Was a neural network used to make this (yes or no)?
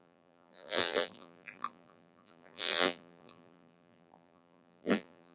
yes